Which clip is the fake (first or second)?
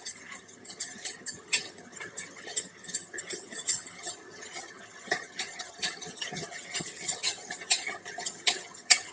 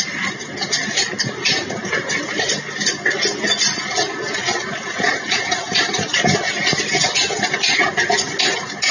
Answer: first